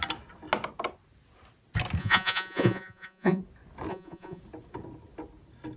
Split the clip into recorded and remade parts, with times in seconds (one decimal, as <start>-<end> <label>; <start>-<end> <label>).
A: 0.0-2.0 recorded; 2.0-3.4 remade; 3.4-3.9 recorded; 3.9-4.4 remade; 4.4-5.8 recorded